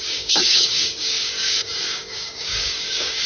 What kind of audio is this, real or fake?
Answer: fake